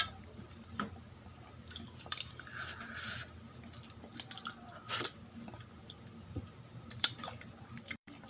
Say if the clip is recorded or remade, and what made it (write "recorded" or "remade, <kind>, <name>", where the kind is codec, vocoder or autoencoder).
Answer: remade, vocoder, BigVGAN v2